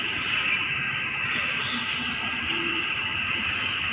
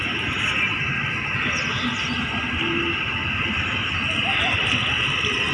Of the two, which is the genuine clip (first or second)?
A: second